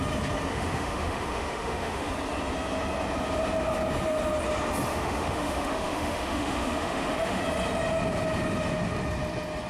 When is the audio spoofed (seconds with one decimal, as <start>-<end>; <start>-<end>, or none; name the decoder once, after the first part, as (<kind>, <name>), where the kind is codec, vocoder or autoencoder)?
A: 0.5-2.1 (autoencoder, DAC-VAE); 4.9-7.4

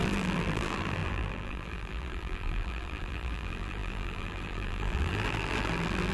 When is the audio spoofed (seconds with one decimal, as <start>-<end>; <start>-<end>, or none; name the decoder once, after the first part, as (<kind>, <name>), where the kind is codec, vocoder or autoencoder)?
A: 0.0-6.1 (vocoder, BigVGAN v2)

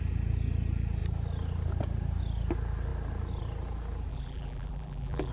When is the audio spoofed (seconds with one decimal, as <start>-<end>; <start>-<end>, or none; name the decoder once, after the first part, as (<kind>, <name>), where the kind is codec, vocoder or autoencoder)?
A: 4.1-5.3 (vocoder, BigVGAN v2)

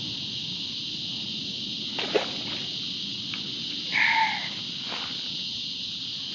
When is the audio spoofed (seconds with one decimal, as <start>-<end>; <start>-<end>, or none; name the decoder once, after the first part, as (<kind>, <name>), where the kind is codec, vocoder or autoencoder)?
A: none

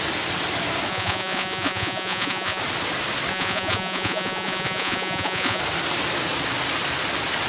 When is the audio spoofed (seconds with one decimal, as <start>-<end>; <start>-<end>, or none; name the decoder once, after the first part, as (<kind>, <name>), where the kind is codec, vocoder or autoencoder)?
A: 0.9-2.6 (vocoder, Vocos); 3.3-5.6

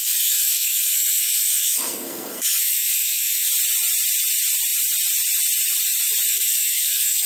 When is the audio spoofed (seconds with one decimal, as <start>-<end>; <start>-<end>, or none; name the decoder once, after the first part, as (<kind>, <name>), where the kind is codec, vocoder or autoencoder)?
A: 0.0-3.5 (codec, SNAC); 6.3-7.3